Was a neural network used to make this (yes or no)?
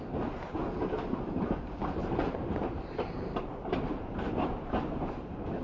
yes